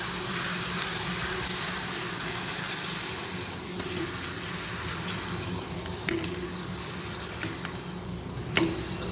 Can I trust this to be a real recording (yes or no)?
yes